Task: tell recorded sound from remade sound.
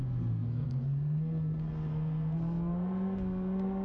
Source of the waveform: remade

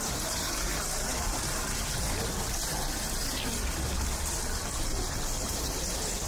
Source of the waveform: recorded